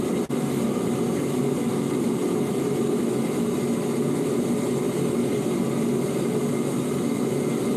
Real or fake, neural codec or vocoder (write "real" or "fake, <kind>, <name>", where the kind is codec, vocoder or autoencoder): real